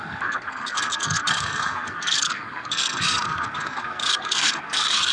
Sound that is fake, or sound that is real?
fake